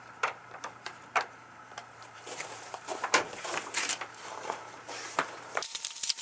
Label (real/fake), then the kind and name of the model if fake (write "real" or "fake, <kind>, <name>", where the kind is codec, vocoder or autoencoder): fake, vocoder, BigVGAN v2